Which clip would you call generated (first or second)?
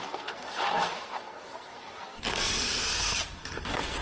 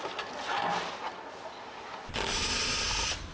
first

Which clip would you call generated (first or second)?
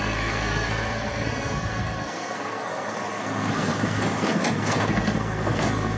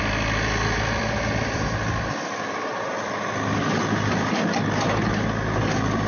first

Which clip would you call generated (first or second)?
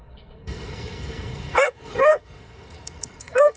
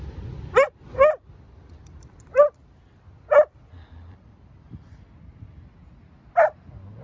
first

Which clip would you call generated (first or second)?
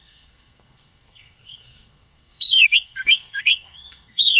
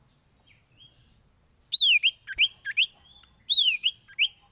first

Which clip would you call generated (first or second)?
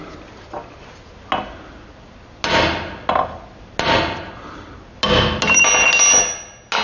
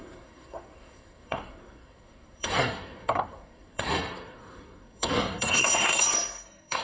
second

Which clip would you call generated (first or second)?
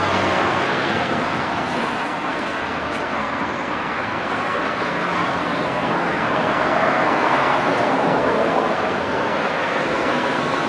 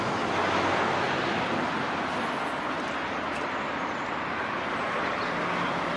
first